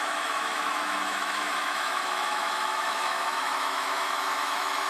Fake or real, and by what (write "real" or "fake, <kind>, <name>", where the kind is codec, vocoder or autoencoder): fake, autoencoder, DAC-VAE